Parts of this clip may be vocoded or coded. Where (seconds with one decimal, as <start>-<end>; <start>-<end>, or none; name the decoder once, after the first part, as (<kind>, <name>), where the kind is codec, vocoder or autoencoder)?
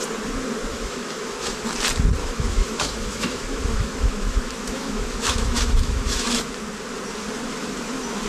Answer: 0.7-1.6 (autoencoder, DAC-VAE); 2.2-6.5